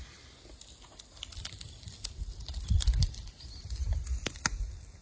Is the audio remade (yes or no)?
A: no